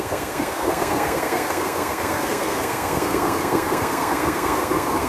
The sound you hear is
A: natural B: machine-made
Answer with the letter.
B